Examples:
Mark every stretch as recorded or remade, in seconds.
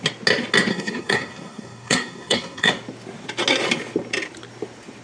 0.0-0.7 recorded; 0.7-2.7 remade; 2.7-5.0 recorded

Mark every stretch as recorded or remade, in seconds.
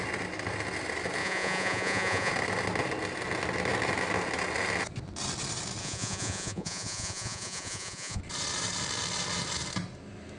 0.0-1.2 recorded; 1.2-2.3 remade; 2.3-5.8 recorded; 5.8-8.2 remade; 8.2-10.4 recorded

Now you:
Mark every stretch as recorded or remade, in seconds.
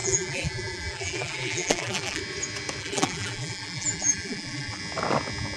0.0-2.2 remade; 2.2-2.8 recorded; 2.8-4.8 remade; 4.8-5.6 recorded